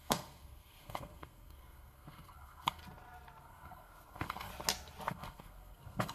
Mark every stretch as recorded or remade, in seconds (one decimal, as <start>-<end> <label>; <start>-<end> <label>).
0.0-2.8 remade; 2.8-3.4 recorded; 3.4-4.5 remade; 4.5-5.1 recorded; 5.1-6.1 remade